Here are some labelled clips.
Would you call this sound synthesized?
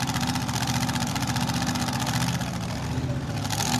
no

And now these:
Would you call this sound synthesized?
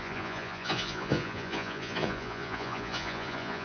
yes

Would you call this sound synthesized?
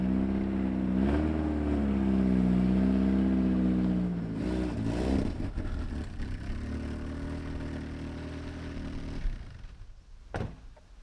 no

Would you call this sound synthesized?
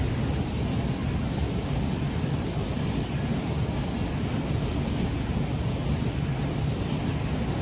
no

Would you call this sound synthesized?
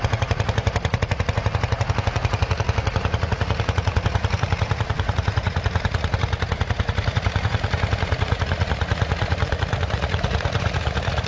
yes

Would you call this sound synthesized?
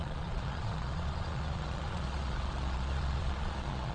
yes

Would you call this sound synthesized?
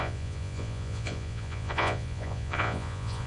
yes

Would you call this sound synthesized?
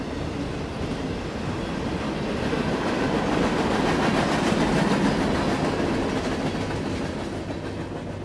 no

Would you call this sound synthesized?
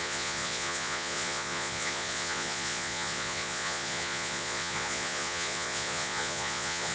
yes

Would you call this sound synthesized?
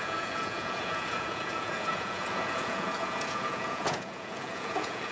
yes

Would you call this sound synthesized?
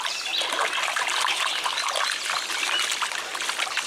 no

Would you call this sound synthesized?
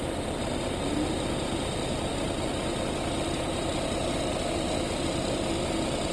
no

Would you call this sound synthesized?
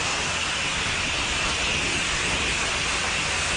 no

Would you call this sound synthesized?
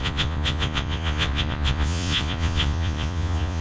yes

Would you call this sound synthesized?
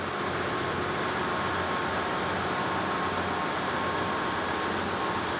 no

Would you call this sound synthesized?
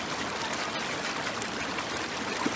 no